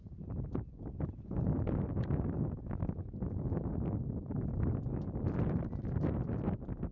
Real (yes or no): yes